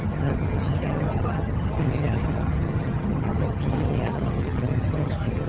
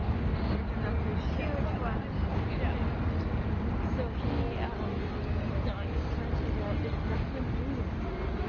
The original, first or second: second